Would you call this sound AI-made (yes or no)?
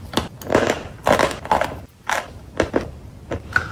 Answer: no